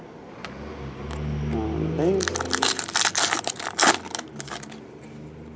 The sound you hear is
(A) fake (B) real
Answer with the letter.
B